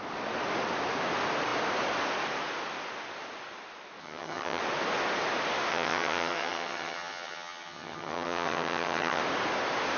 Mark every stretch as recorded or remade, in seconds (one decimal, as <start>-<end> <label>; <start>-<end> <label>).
0.0-4.0 recorded; 4.0-4.6 remade; 4.6-5.7 recorded; 5.7-9.2 remade; 9.2-10.0 recorded